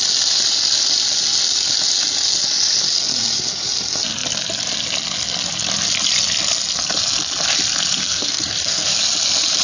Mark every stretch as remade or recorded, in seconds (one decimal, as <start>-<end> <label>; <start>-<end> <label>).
0.0-8.0 recorded; 8.0-8.9 remade; 8.9-9.6 recorded

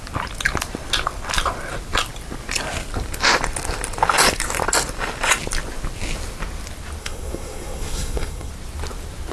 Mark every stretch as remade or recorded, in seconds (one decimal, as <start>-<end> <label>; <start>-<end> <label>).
0.0-7.0 recorded; 7.0-8.5 remade; 8.5-9.3 recorded

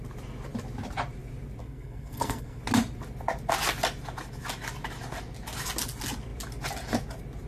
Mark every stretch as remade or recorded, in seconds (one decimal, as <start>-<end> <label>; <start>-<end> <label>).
0.0-1.6 recorded; 1.6-2.6 remade; 2.6-7.5 recorded

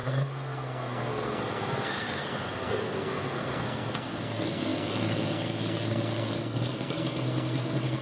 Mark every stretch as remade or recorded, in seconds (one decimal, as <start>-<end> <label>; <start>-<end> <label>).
0.0-8.0 remade

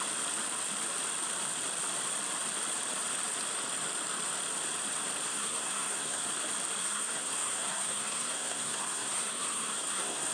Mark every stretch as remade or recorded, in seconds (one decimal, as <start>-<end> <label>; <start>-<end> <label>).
0.0-5.3 recorded; 5.3-6.2 remade; 6.2-6.8 recorded; 6.8-10.3 remade

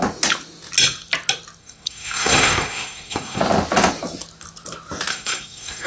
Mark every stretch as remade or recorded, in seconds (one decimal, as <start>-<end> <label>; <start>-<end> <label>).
0.0-1.6 recorded; 1.6-3.4 remade; 3.4-5.1 recorded; 5.1-5.9 remade

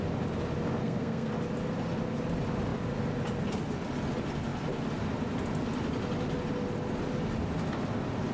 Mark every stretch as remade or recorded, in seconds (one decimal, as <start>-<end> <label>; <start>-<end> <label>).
0.0-0.8 recorded; 0.8-1.3 remade; 1.3-8.3 recorded